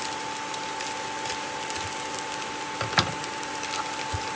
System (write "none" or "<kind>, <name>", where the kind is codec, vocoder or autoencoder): none